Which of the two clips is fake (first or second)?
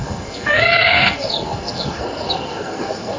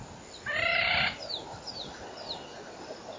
first